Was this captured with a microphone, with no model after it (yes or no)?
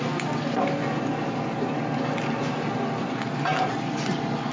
yes